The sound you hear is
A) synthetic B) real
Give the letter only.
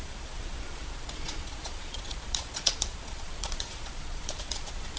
A